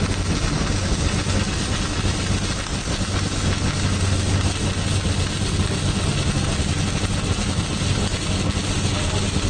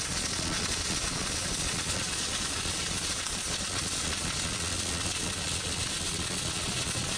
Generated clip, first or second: second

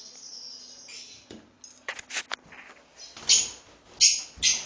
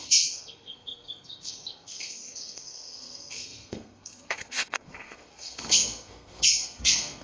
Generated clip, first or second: second